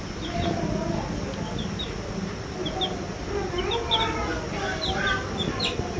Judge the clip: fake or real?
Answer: real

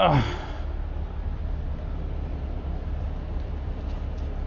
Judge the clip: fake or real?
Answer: real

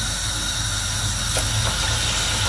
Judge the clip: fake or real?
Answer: real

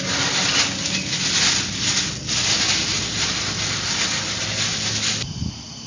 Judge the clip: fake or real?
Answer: real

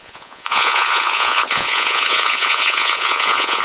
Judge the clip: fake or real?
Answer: fake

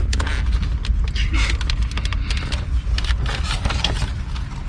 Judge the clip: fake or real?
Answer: real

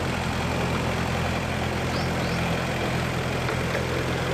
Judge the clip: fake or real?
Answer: real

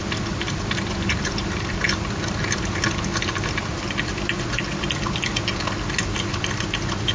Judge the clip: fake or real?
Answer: real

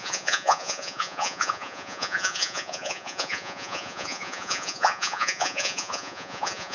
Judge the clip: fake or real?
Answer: fake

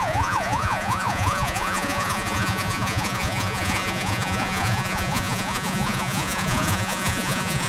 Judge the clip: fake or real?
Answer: fake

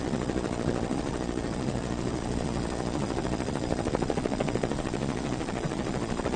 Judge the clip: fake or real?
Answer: fake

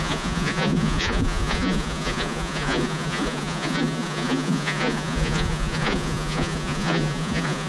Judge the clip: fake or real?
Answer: fake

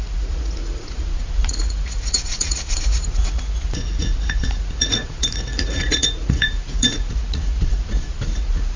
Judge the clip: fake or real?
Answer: fake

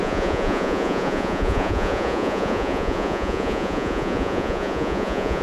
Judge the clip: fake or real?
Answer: fake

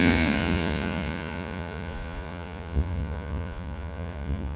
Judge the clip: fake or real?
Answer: fake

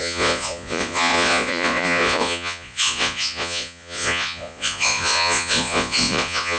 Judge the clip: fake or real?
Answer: fake